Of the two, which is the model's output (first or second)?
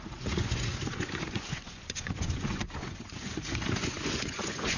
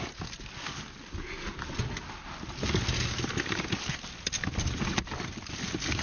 first